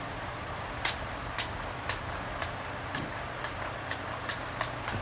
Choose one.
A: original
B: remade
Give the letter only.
B